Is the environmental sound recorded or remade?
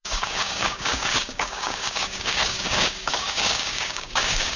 remade